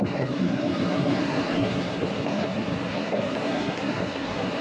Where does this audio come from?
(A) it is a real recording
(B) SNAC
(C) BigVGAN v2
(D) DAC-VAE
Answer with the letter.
B